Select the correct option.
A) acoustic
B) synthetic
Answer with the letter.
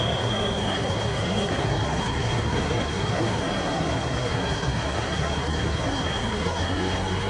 B